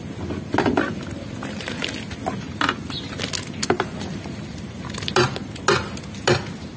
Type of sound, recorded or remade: recorded